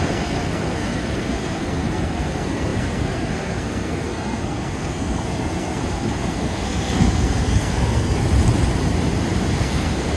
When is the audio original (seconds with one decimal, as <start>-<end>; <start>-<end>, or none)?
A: 8.2-9.6